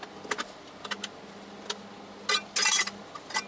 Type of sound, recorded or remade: recorded